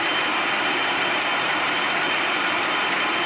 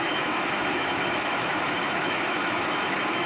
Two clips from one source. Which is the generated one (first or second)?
second